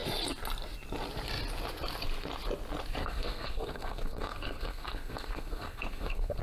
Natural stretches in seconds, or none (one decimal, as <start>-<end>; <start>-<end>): 0.0-3.0